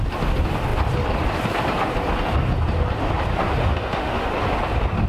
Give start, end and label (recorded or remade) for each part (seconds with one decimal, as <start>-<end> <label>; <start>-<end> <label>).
0.0-3.6 recorded; 3.6-4.3 remade; 4.3-5.1 recorded